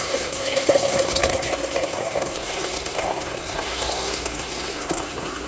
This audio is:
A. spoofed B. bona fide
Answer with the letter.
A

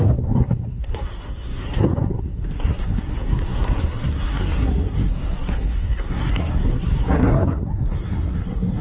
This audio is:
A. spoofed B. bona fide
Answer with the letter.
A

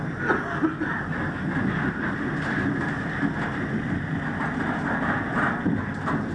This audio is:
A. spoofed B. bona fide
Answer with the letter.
B